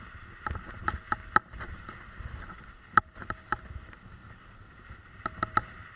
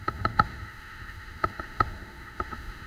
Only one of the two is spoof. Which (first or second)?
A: second